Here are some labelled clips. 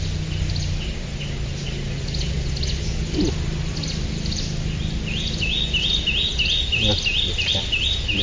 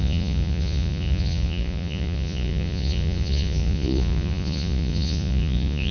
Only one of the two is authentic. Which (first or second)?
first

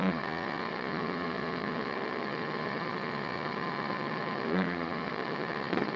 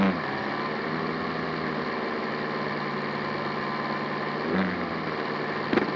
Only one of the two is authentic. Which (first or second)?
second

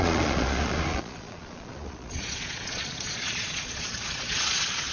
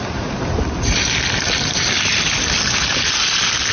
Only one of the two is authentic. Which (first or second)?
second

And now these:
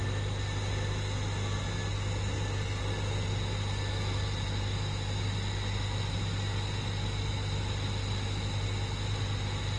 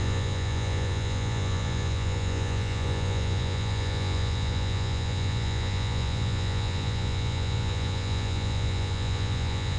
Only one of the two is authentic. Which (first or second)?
first